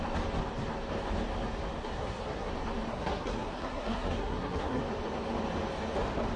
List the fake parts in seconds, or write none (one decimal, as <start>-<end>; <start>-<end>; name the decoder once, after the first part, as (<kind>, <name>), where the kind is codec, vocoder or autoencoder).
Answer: 1.8-2.5 (codec, SNAC); 2.9-4.8